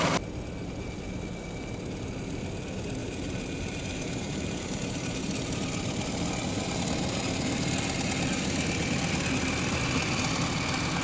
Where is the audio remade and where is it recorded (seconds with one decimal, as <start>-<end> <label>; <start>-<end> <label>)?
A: 0.0-3.0 recorded; 3.0-5.2 remade; 5.2-11.0 recorded